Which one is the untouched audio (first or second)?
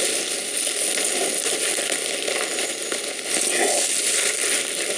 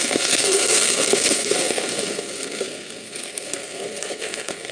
first